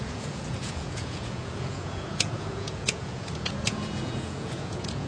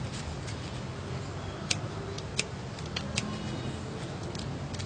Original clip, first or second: second